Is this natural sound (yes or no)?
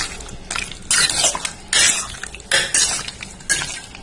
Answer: yes